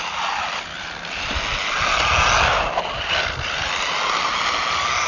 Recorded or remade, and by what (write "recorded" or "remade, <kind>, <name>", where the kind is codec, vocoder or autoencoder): recorded